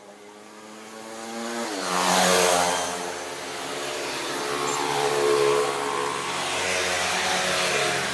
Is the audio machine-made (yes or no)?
no